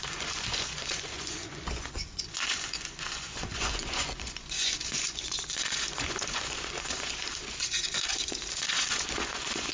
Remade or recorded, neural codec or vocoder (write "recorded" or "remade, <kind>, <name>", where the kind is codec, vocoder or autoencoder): remade, vocoder, Vocos